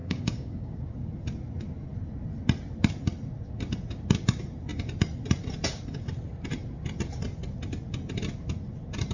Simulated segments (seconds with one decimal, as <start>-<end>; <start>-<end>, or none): 0.0-0.8